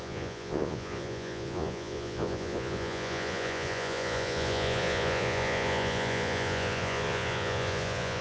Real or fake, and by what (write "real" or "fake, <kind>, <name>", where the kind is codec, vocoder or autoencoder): fake, vocoder, Vocos